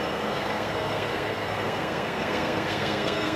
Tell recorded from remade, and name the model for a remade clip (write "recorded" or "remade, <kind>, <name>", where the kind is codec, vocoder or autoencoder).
remade, codec, SNAC